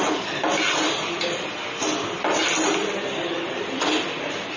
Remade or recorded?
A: recorded